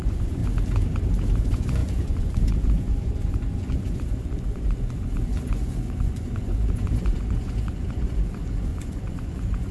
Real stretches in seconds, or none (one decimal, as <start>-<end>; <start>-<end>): 0.4-1.4